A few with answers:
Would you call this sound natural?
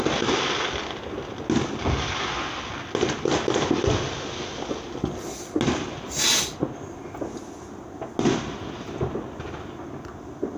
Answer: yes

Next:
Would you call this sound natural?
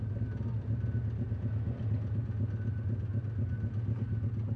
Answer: yes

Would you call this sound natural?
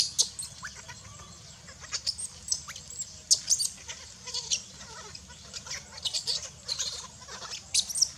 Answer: yes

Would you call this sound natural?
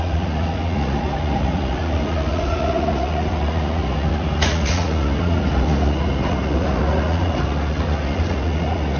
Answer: no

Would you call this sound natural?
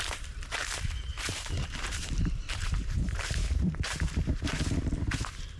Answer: no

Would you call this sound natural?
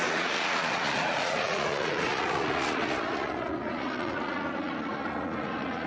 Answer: no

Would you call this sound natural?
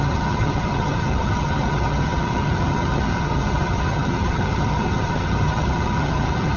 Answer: no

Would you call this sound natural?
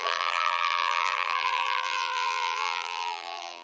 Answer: no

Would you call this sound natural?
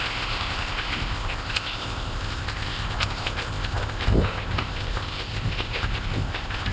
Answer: no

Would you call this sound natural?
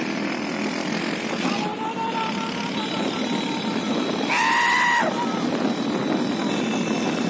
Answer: yes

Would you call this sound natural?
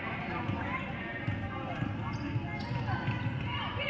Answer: yes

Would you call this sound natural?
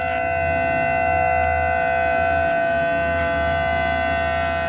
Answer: yes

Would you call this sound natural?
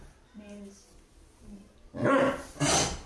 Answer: yes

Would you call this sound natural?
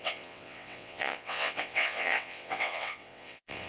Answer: no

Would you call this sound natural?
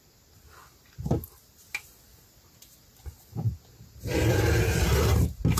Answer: yes